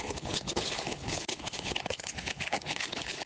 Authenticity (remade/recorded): remade